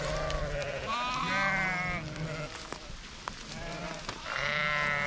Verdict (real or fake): real